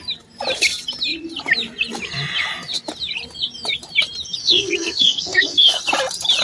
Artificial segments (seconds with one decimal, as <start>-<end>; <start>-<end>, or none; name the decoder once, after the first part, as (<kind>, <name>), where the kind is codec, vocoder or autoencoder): 4.4-5.8 (codec, SNAC)